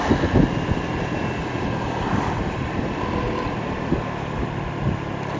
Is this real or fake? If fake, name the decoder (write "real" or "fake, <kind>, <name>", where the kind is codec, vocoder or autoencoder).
real